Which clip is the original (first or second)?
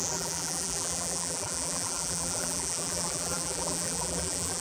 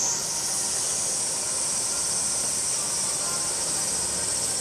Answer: second